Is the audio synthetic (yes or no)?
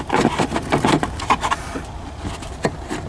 no